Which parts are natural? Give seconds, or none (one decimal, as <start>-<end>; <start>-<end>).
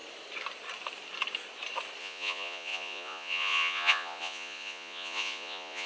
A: 0.0-2.0